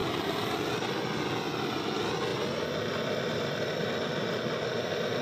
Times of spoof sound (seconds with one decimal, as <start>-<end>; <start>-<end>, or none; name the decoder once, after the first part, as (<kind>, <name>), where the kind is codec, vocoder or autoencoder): none